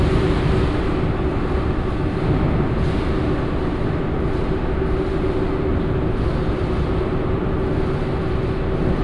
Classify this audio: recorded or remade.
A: recorded